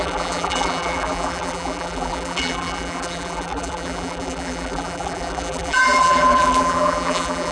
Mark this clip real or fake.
fake